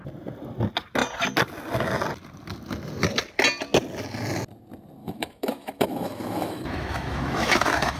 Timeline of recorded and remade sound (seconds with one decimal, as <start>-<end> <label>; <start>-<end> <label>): 0.0-5.0 recorded; 5.0-8.0 remade